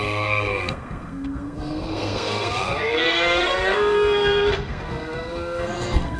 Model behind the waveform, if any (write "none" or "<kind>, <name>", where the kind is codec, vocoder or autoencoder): codec, SNAC